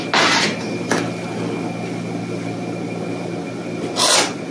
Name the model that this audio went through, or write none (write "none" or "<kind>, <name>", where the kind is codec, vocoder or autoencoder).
none